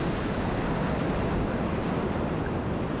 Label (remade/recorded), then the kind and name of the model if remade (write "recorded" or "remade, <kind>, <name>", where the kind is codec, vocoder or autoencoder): recorded